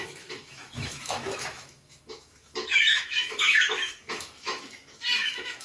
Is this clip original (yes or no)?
no